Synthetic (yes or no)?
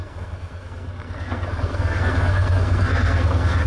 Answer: yes